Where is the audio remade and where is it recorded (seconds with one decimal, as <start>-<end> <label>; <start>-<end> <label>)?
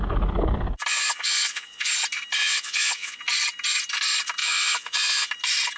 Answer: 0.0-0.9 recorded; 0.9-1.9 remade; 1.9-2.4 recorded; 2.4-3.2 remade; 3.2-4.4 recorded; 4.4-5.3 remade; 5.3-5.8 recorded